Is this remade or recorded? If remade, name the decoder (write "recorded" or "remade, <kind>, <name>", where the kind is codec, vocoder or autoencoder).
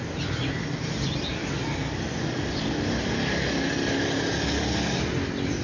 recorded